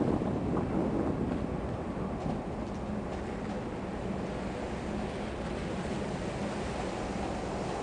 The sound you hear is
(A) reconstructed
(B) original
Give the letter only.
B